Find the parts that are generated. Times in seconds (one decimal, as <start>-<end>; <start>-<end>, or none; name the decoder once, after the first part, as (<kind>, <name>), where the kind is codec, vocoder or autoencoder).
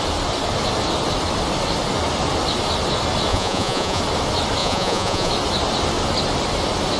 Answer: 3.3-4.0 (vocoder, Vocos); 4.6-5.3